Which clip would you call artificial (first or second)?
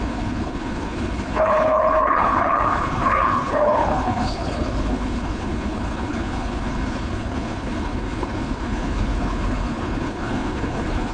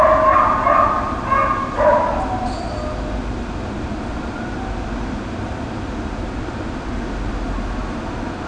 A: first